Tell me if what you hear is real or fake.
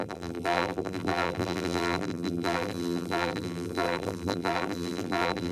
fake